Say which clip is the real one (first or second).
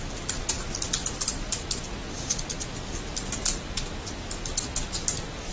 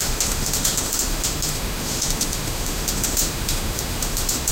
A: first